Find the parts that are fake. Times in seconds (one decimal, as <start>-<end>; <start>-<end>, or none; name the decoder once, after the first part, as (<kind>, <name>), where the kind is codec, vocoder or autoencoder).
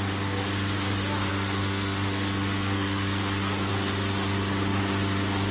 1.3-3.7 (codec, SNAC)